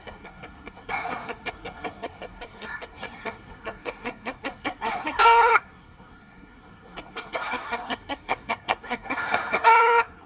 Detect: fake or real fake